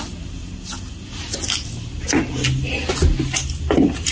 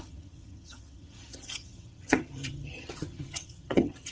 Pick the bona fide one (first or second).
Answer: first